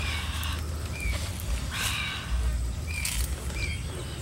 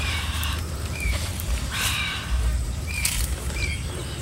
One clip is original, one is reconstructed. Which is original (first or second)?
first